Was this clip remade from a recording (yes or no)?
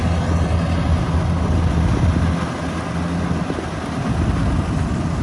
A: no